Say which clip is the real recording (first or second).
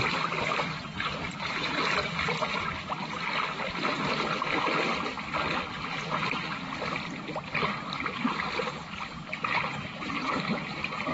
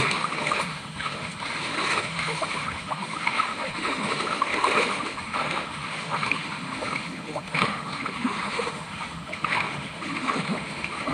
first